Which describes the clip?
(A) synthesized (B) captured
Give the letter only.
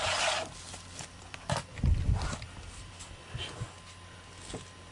B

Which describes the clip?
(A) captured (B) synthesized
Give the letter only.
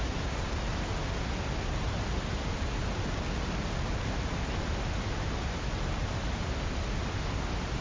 A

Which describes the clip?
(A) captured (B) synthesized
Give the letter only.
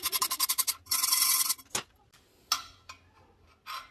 A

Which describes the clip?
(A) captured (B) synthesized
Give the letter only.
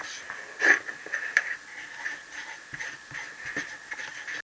A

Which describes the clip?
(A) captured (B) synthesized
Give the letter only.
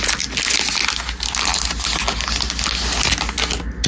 A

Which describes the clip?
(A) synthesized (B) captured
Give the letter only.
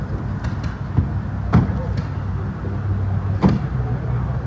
B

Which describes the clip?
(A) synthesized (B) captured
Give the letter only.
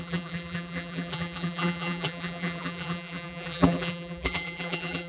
A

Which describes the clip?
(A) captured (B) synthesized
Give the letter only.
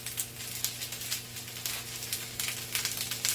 A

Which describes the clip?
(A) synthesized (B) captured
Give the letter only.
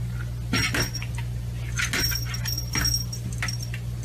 B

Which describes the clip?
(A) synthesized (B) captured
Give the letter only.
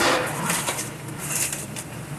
A